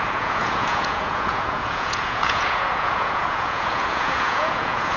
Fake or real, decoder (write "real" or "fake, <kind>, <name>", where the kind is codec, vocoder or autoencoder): fake, vocoder, Vocos